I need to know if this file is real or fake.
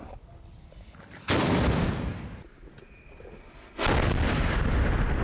real